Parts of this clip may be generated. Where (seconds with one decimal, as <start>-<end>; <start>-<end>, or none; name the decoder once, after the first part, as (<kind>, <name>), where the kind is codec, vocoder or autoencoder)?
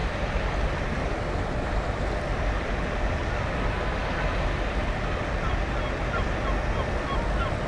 none